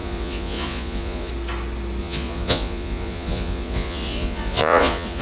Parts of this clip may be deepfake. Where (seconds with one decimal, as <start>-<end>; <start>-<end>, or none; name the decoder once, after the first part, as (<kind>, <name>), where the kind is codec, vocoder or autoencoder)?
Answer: 0.0-1.3 (vocoder, Vocos); 2.0-5.2